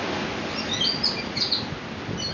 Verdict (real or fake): real